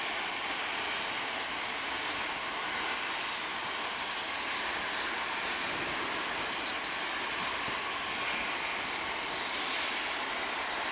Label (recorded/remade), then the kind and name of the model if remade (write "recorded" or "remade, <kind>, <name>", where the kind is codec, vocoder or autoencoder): recorded